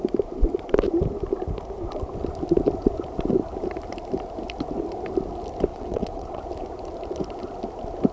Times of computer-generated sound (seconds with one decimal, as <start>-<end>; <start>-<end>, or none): 5.7-6.4